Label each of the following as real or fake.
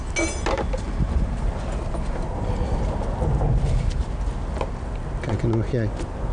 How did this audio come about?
real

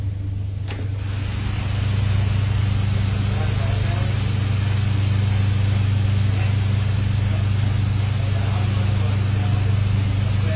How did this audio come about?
real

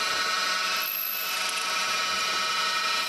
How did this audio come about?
real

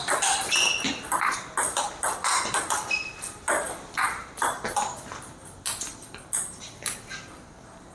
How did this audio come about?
real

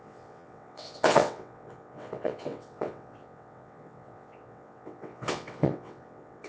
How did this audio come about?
fake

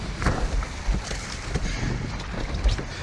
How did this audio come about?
real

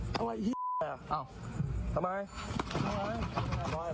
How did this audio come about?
real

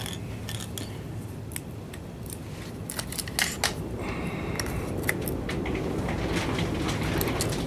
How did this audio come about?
real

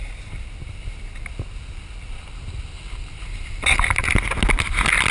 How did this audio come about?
real